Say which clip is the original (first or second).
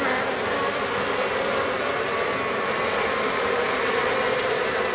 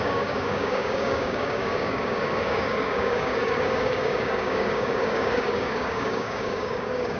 first